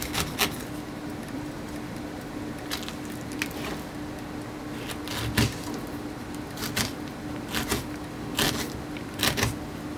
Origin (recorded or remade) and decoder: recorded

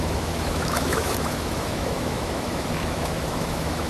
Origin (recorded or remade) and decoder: remade, autoencoder, DAC-VAE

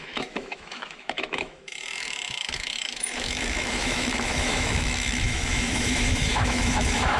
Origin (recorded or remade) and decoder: remade, autoencoder, DAC-VAE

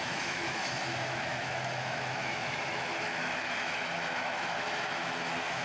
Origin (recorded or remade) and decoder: remade, autoencoder, DAC-VAE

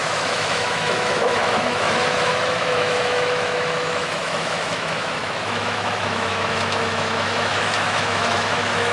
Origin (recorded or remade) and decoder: remade, autoencoder, DAC-VAE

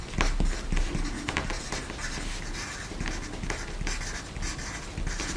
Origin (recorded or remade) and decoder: recorded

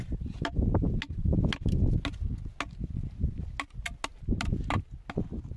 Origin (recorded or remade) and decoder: recorded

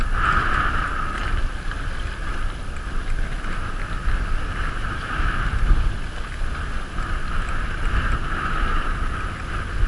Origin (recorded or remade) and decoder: recorded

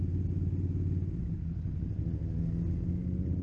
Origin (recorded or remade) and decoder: recorded